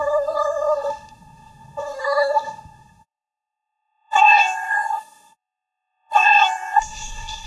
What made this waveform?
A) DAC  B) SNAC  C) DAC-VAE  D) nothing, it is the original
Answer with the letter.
B